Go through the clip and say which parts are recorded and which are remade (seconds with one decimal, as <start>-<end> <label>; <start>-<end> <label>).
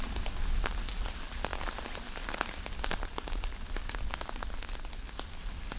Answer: 0.0-5.8 recorded